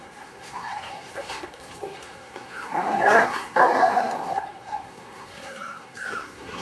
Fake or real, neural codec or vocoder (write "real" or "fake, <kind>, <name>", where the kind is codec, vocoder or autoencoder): fake, codec, SNAC